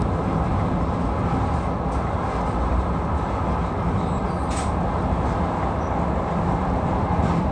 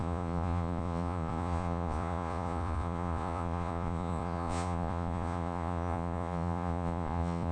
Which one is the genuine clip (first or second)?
first